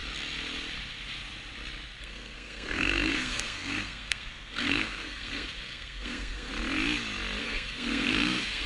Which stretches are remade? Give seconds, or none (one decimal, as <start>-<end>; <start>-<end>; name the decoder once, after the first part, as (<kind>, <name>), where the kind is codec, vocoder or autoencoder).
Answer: 2.0-6.5 (codec, SNAC); 7.4-8.7